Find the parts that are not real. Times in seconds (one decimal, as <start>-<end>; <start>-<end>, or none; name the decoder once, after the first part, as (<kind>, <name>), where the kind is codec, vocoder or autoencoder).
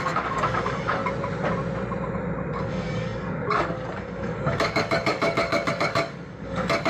0.0-1.0 (codec, DAC); 2.7-6.9